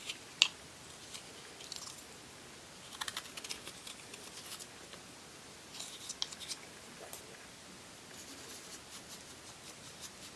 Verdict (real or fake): real